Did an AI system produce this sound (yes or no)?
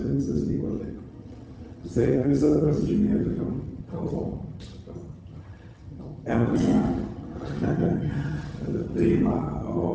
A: yes